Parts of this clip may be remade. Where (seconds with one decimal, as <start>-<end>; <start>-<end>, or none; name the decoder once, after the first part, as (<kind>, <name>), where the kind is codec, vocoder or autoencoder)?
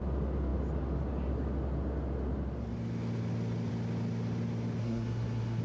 4.8-5.6 (codec, SNAC)